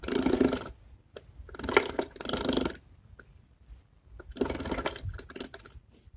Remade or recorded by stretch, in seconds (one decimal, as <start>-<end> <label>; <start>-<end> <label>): 0.0-6.2 recorded